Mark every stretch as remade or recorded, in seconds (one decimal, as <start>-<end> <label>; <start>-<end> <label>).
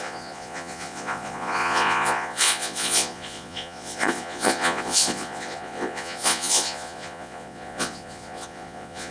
0.0-9.1 remade